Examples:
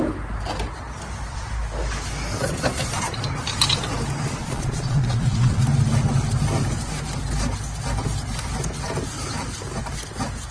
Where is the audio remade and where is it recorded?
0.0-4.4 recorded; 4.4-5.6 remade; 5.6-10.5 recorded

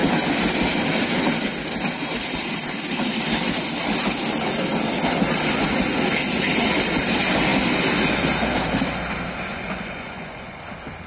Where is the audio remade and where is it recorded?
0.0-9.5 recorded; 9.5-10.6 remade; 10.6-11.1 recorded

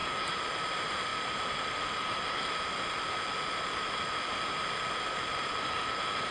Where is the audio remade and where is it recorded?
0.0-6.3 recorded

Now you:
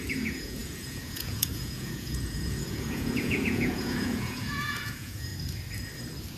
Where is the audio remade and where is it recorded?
0.0-5.3 remade; 5.3-6.4 recorded

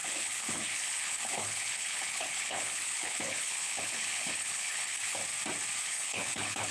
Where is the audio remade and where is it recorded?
0.0-5.2 remade; 5.2-5.8 recorded; 5.8-6.7 remade